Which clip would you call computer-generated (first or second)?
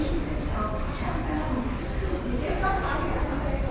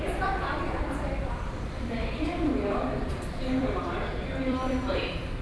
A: second